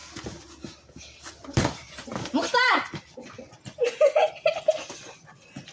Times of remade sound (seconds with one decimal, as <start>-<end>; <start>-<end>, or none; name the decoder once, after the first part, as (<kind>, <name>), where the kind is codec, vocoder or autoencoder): 0.0-3.4 (vocoder, BigVGAN v2)